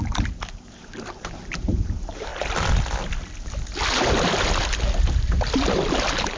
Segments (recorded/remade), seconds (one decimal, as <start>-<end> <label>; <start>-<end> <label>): 0.0-2.3 remade; 2.3-6.4 recorded